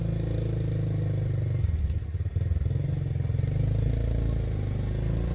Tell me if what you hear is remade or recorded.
recorded